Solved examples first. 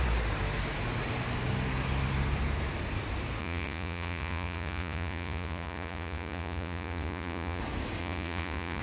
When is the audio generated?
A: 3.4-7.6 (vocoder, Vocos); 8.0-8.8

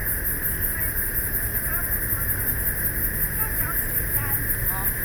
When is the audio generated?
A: none

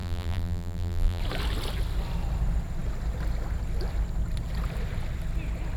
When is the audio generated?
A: 0.0-1.2 (vocoder, BigVGAN v2)

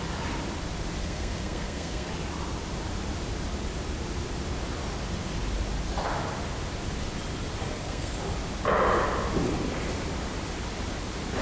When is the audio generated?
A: 1.0-2.1 (codec, SNAC); 7.6-8.1

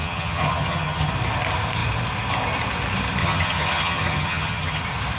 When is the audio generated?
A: 0.0-1.1 (vocoder, HiFi-GAN); 3.2-4.8

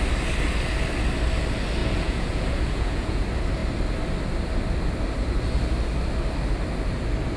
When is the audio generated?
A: 1.8-3.2 (vocoder, Vocos)